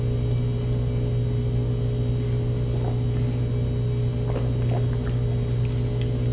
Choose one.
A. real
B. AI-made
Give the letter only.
A